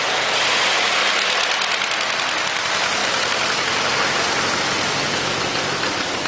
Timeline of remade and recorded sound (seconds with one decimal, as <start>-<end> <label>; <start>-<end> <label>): 0.0-3.0 recorded; 3.0-6.3 remade